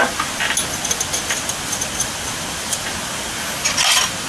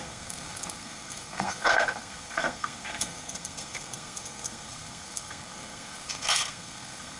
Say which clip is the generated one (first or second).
second